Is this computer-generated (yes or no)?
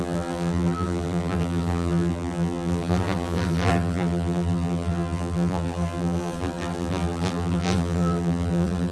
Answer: yes